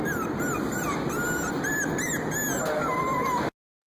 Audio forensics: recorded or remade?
recorded